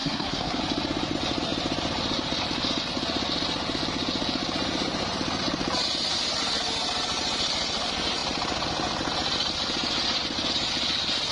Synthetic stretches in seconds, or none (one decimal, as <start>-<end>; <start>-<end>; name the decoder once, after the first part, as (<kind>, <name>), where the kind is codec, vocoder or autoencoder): 0.0-0.6 (codec, SNAC)